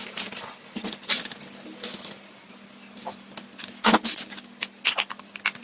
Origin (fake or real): real